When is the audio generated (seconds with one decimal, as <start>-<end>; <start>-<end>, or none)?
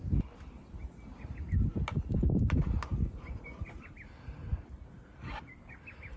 none